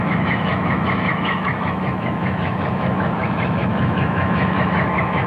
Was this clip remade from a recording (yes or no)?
yes